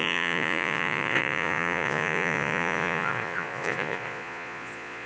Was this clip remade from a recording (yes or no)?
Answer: yes